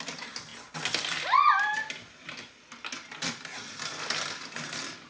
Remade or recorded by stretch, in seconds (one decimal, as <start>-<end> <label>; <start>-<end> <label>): 0.0-5.1 recorded